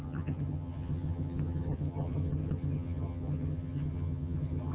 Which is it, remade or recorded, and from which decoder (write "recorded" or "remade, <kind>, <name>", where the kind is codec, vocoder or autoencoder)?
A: remade, vocoder, HiFi-GAN